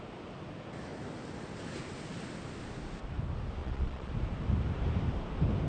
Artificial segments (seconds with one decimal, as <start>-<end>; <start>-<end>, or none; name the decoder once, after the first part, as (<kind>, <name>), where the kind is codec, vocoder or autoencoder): 3.6-4.1 (vocoder, Vocos)